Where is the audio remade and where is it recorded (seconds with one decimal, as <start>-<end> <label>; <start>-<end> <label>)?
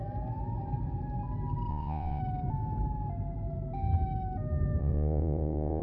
0.0-1.7 recorded; 1.7-2.2 remade; 2.2-4.8 recorded; 4.8-5.8 remade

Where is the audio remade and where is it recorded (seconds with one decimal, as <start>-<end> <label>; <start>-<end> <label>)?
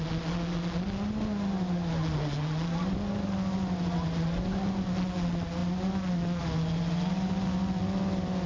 0.0-8.5 recorded